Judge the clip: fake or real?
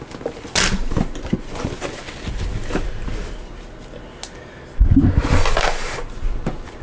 real